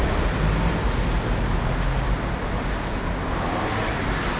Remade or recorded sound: recorded